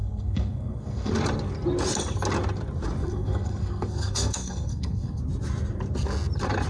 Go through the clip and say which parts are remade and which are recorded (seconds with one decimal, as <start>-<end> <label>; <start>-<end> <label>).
0.0-1.1 remade; 1.1-3.0 recorded; 3.0-5.2 remade; 5.2-6.7 recorded